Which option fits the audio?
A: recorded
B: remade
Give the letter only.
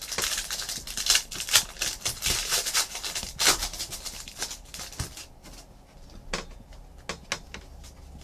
A